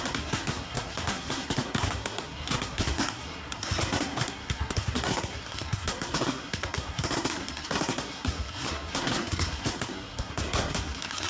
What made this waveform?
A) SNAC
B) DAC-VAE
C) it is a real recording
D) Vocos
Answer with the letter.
A